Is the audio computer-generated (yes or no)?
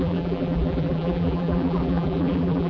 yes